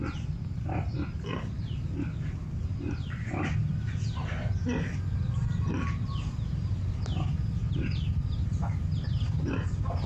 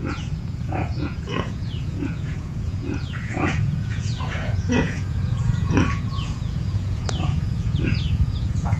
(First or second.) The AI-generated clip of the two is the second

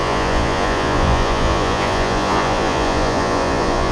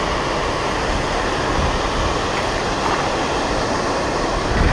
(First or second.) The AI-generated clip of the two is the first